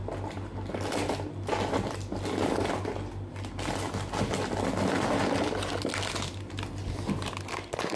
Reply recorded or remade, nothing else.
recorded